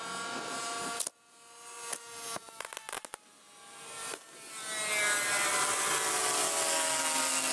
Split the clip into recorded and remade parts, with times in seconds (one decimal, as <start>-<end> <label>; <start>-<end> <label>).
0.0-7.5 recorded